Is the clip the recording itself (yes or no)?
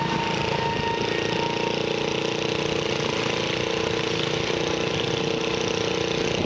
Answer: yes